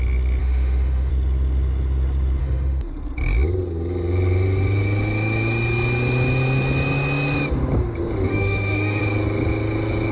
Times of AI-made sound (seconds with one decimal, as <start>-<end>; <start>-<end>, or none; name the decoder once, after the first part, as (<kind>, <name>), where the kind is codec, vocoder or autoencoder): 0.4-1.1 (autoencoder, DAC-VAE); 2.4-2.9; 8.3-9.0